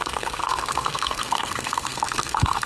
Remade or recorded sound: remade